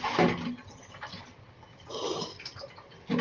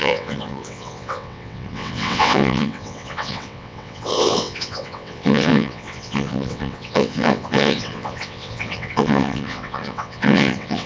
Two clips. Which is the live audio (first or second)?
first